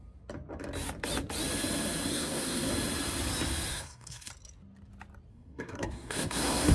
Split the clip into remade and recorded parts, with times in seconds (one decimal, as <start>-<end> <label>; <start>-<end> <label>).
0.0-2.1 recorded; 2.1-2.7 remade; 2.7-3.7 recorded; 3.7-4.3 remade; 4.3-5.3 recorded; 5.3-6.7 remade